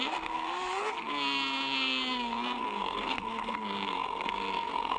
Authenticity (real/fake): fake